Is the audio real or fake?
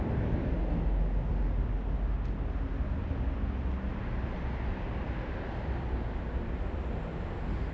real